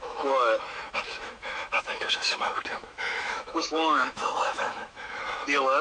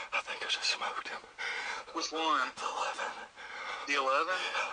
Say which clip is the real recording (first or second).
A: second